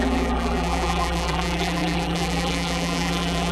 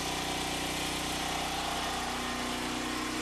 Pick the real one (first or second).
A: second